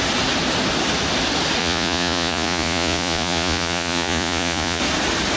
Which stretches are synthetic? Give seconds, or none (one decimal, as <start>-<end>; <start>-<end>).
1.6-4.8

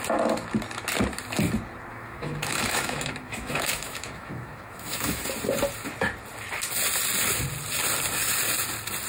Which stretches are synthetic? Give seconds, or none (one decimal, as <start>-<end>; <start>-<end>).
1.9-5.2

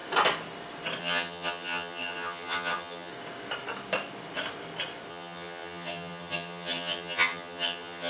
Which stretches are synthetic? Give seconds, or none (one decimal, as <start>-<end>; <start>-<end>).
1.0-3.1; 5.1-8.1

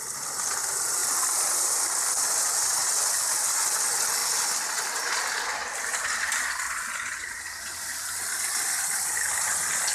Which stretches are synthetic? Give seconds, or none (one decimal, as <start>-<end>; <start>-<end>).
none

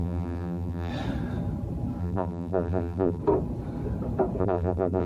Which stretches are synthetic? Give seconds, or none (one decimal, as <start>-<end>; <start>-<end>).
0.0-0.9; 2.0-3.2; 4.4-5.1

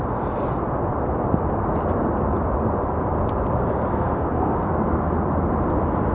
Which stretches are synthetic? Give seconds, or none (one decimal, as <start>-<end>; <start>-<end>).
3.9-4.6

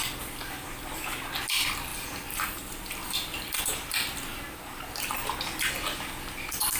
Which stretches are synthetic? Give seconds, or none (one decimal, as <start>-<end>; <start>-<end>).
1.9-3.6